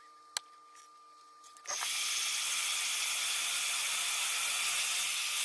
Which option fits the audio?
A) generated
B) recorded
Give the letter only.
B